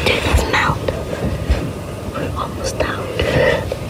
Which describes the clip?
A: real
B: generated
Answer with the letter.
B